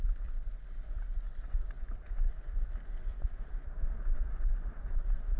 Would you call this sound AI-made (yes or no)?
no